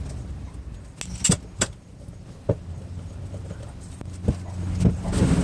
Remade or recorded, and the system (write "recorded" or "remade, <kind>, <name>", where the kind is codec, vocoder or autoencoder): recorded